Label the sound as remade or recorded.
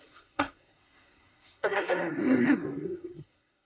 remade